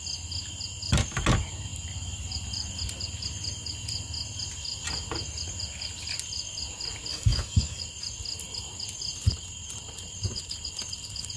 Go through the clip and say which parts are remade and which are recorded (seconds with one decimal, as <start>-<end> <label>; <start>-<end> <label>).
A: 0.0-7.1 recorded; 7.1-7.8 remade; 7.8-11.4 recorded